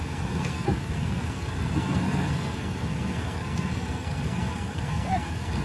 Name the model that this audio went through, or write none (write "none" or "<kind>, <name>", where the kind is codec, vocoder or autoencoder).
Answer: codec, SNAC